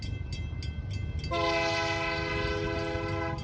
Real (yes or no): yes